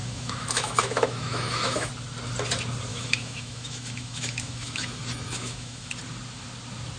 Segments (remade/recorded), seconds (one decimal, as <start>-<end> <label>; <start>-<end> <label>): 0.0-1.9 remade; 1.9-2.9 recorded; 2.9-5.9 remade; 5.9-7.0 recorded

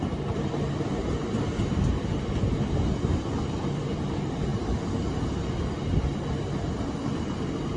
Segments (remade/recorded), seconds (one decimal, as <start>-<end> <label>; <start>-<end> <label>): 0.0-7.8 recorded

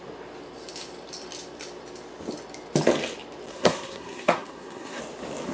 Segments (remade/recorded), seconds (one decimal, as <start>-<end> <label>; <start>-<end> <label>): 0.0-3.5 recorded; 3.5-5.0 remade; 5.0-5.5 recorded

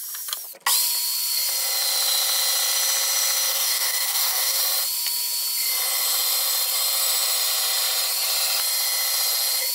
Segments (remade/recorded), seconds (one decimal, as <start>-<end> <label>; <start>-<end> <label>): 0.0-3.5 recorded; 3.5-4.6 remade; 4.6-9.7 recorded

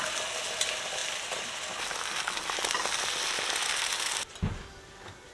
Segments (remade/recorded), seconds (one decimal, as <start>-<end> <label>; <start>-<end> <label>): 0.0-5.3 recorded

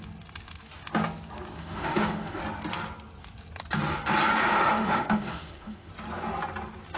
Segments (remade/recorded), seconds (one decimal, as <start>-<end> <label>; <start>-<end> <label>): 0.0-1.6 recorded; 1.6-2.4 remade; 2.4-4.4 recorded; 4.4-5.9 remade; 5.9-7.0 recorded